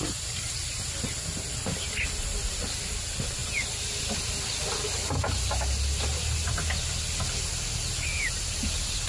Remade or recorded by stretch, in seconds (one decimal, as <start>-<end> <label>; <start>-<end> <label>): 0.0-9.1 recorded